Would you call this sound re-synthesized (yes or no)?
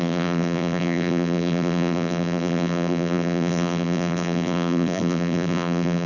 yes